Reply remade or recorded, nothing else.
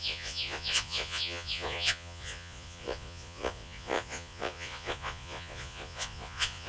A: remade